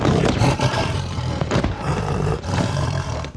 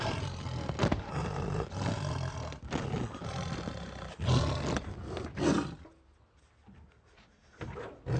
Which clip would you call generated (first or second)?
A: first